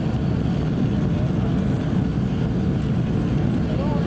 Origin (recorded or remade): recorded